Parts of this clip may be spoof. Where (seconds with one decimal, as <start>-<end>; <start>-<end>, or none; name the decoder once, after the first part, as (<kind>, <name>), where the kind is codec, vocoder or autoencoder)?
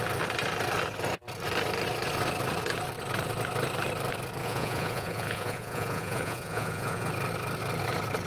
4.4-7.1 (vocoder, Vocos)